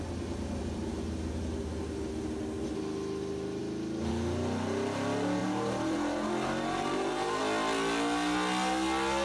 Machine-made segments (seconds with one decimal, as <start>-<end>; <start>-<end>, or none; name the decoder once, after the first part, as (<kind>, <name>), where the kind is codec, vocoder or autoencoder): 0.6-1.4 (vocoder, BigVGAN v2); 5.4-7.4